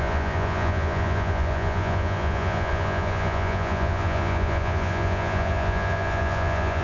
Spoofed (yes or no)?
yes